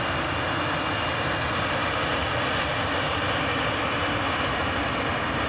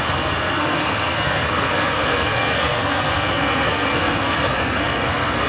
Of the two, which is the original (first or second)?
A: first